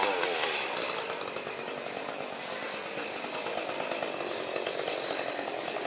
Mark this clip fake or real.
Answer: real